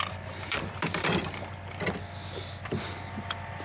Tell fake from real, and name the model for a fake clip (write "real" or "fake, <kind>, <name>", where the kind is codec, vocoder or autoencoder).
fake, vocoder, BigVGAN v2